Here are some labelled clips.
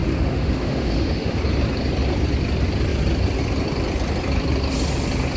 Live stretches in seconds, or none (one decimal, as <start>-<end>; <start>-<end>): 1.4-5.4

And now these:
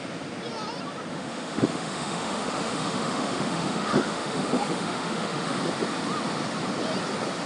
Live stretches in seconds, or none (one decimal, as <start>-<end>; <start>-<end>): 0.0-1.1; 5.6-7.5

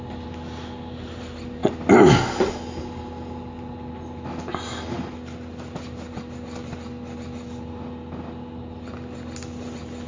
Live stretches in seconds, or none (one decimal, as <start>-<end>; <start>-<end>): 0.0-10.1

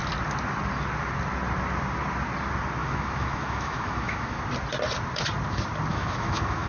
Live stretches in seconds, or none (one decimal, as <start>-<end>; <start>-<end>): 0.0-2.8; 4.4-5.9

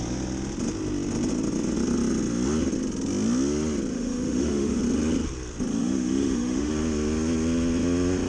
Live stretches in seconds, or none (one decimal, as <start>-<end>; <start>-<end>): 0.0-3.9; 4.8-5.8; 6.7-8.3

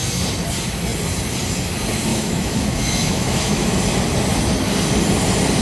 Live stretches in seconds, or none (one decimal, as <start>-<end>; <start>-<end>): 0.0-2.1; 3.7-5.6

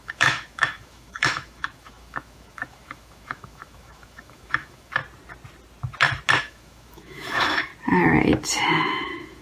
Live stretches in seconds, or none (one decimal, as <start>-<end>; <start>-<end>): 5.0-6.4; 7.7-8.6

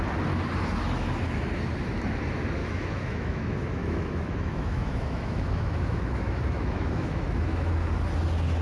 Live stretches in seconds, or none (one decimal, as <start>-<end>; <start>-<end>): 0.0-2.6; 7.7-8.6